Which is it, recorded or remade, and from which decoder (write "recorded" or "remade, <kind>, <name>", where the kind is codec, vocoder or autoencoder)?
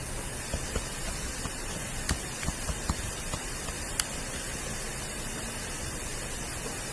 recorded